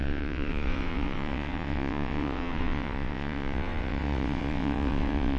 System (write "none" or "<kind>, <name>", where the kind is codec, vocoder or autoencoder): vocoder, WaveNeXt